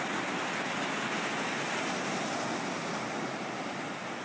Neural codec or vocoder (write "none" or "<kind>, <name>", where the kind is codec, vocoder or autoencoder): none